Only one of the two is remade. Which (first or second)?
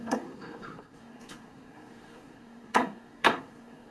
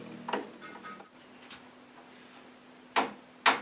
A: first